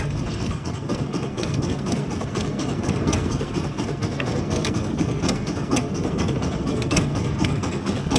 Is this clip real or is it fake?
fake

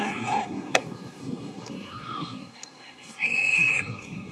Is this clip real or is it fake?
fake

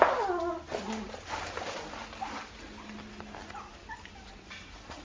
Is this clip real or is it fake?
real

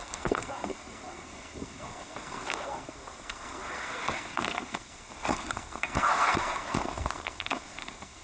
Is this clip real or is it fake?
fake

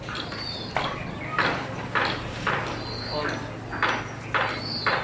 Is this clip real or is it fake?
real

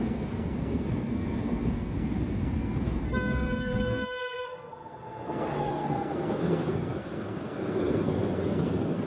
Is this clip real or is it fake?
fake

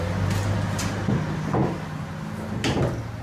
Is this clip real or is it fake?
real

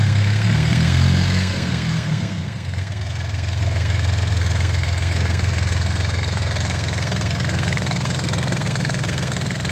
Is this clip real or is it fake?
fake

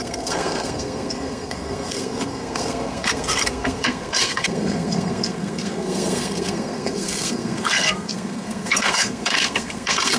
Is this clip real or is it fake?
fake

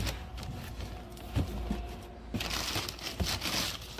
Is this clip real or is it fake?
real